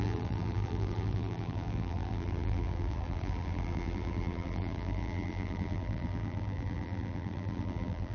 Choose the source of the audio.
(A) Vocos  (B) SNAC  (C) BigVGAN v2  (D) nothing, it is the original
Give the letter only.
C